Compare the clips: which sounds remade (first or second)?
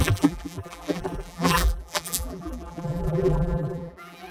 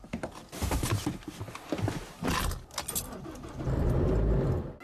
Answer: first